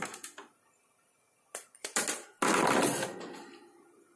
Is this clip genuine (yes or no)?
yes